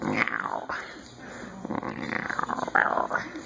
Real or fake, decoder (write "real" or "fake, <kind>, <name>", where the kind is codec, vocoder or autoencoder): real